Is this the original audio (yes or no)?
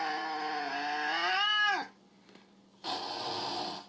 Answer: yes